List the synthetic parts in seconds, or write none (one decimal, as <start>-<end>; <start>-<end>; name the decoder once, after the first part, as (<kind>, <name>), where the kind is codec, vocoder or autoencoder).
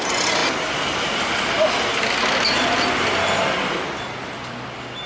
none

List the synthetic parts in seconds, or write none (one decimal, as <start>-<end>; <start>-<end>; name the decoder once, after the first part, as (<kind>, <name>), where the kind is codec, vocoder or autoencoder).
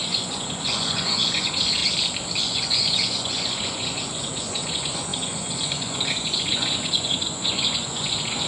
0.0-1.8 (vocoder, Vocos); 2.4-8.5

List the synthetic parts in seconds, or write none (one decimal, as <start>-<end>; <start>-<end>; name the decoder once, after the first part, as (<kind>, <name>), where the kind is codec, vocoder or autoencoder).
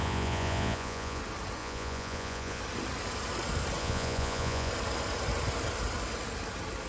0.0-1.2 (vocoder, Vocos); 1.6-2.6; 3.8-4.7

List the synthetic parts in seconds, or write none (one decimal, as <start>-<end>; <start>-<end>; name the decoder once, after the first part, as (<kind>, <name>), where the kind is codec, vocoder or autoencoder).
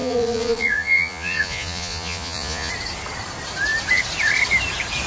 0.0-2.7 (vocoder, Vocos)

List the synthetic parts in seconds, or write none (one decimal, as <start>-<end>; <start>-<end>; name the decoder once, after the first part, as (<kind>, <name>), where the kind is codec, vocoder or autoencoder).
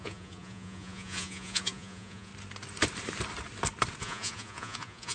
0.0-2.3 (vocoder, Vocos); 4.0-5.1